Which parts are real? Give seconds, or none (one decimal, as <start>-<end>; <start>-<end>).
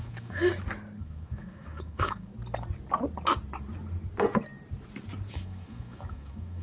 0.5-1.0; 2.3-5.3